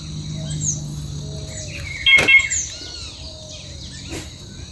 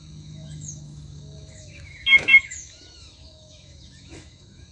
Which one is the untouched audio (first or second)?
first